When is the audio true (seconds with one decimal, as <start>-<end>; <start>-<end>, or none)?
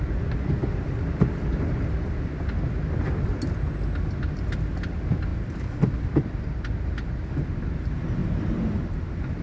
0.0-5.3; 5.8-8.2; 8.8-9.4